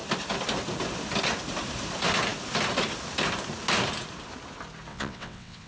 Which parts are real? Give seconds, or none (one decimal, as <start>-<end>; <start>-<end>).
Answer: 0.0-4.9